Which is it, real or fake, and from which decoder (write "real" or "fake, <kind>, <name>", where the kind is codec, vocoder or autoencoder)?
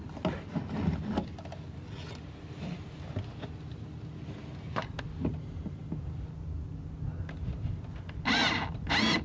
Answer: real